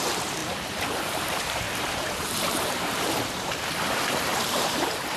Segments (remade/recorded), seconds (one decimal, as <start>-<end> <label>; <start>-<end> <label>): 0.0-5.2 remade